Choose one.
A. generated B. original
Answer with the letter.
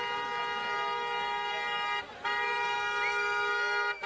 B